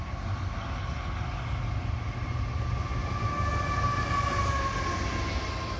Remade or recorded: recorded